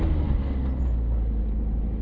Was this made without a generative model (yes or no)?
yes